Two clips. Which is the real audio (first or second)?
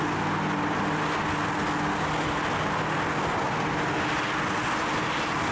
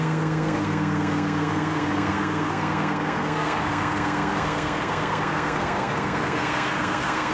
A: first